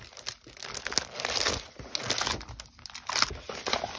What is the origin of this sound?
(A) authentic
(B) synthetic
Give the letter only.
A